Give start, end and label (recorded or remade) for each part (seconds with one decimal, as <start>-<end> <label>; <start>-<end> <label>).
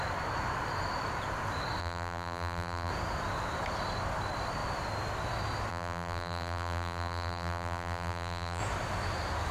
0.0-1.8 recorded; 1.8-2.9 remade; 2.9-5.7 recorded; 5.7-8.6 remade; 8.6-9.5 recorded